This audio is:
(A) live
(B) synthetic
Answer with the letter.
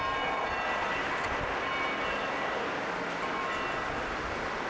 A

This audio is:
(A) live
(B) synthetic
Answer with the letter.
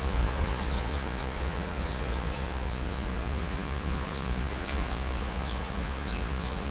B